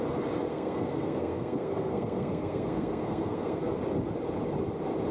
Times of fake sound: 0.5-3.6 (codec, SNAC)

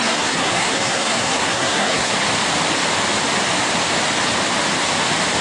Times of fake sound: 0.0-2.1 (codec, SNAC)

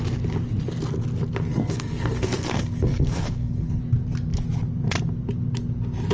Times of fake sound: 1.5-3.8 (codec, SNAC)

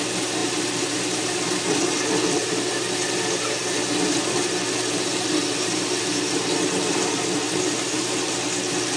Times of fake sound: none

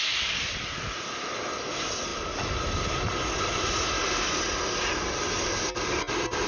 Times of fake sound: none

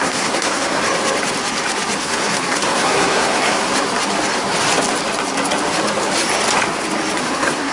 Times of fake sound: 0.0-0.8 (codec, SNAC); 2.0-3.7; 7.2-7.7

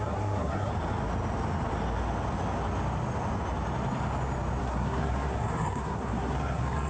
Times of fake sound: 0.0-0.7 (codec, SNAC); 4.6-6.9